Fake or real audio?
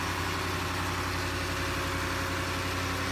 real